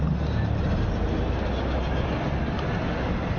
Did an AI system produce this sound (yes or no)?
no